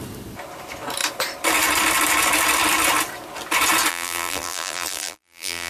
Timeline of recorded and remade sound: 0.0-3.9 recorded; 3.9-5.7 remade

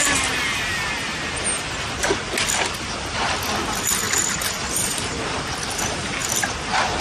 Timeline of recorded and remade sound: 0.0-4.0 recorded; 4.0-5.8 remade; 5.8-7.0 recorded